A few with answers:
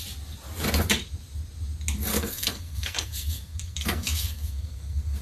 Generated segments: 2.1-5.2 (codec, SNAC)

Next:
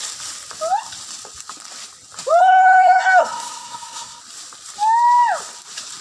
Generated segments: 2.4-4.2 (codec, SNAC)

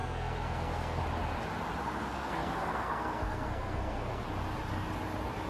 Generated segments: 0.0-1.0 (codec, SNAC); 1.8-4.2